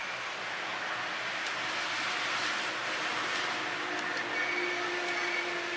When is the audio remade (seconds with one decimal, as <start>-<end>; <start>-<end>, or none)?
none